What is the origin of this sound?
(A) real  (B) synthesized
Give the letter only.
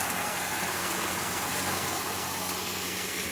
B